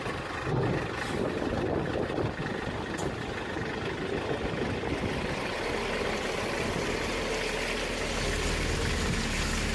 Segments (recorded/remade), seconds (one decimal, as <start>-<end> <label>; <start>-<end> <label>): 0.0-9.7 recorded